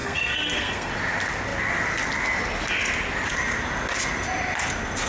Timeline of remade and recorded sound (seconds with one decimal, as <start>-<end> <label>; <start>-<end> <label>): 0.0-0.9 remade; 0.9-5.1 recorded